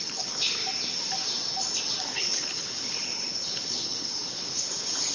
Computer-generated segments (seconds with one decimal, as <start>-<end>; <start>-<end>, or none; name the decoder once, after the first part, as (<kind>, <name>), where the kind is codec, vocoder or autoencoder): 0.0-0.6 (codec, HILCodec); 2.0-5.1